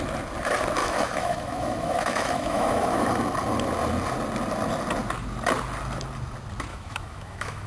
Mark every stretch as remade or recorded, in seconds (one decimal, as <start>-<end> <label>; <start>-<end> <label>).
0.0-0.8 recorded; 0.8-3.1 remade; 3.1-6.7 recorded; 6.7-7.7 remade